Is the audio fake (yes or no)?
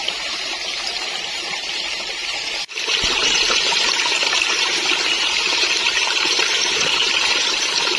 yes